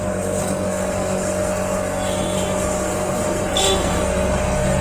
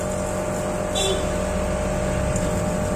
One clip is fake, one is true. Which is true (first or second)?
second